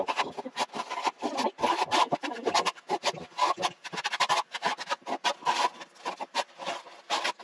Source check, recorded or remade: recorded